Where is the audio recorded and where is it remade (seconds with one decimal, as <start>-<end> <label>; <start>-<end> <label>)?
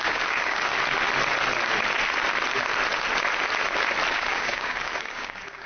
0.0-0.7 remade; 0.7-4.1 recorded; 4.1-5.7 remade